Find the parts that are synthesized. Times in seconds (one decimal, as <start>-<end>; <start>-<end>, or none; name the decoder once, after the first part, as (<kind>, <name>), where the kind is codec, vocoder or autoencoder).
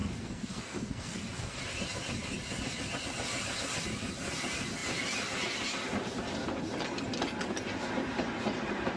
0.0-1.6 (codec, SNAC)